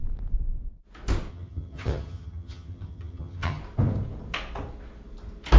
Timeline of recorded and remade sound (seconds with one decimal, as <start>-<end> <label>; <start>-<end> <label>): 0.0-1.3 recorded; 1.3-3.6 remade; 3.6-5.6 recorded